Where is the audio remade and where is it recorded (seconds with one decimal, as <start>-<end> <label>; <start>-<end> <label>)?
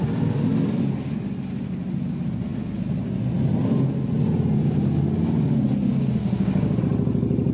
0.0-6.2 recorded; 6.2-6.8 remade; 6.8-7.5 recorded